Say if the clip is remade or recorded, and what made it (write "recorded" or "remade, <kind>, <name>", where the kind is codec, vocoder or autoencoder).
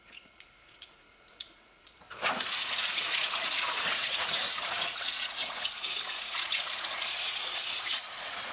remade, vocoder, Vocos